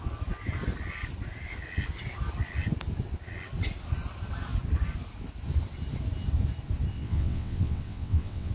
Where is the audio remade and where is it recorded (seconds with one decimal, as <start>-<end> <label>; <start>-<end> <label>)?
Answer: 0.0-6.9 recorded; 6.9-8.5 remade